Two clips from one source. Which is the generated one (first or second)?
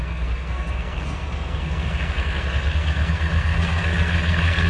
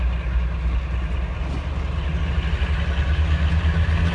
first